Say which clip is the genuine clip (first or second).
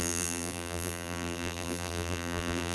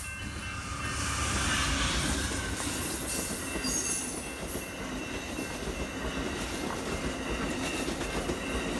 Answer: second